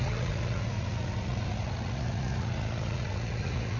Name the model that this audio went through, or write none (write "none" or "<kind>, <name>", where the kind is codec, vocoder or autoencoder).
vocoder, Vocos